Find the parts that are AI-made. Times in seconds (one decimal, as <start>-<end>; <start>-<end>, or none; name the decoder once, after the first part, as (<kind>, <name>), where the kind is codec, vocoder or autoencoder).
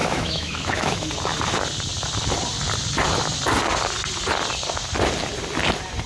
0.0-1.1 (autoencoder, DAC-VAE)